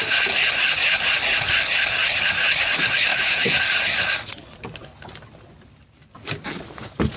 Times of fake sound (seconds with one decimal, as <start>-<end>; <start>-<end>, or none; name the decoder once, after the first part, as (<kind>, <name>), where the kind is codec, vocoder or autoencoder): 3.1-3.6 (autoencoder, DAC-VAE)